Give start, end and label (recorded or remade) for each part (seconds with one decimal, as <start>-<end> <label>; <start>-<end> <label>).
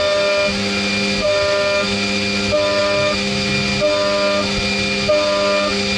0.0-6.0 recorded